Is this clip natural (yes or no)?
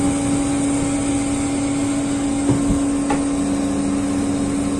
yes